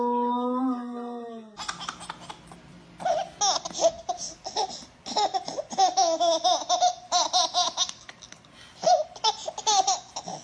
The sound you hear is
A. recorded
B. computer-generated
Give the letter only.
A